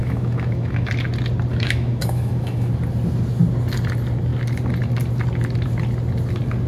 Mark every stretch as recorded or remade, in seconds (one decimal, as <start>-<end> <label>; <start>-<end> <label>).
0.0-0.9 remade; 0.9-1.5 recorded; 1.5-2.7 remade; 2.7-6.7 recorded